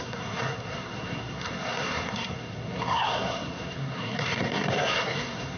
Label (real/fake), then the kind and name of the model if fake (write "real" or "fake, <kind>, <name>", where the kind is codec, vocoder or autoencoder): fake, codec, SNAC